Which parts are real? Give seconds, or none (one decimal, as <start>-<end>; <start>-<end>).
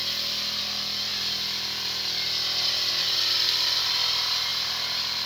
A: 0.0-0.6; 1.1-2.9